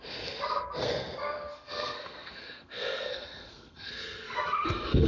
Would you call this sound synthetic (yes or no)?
yes